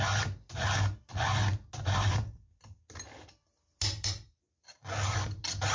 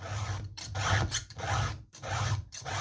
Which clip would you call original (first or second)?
first